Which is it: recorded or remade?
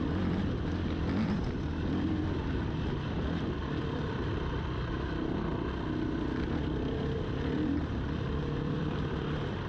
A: recorded